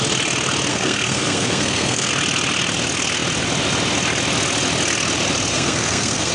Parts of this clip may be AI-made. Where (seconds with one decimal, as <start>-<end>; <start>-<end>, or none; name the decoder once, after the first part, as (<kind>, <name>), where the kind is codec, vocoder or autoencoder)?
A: 0.7-2.1 (codec, SNAC); 5.5-6.3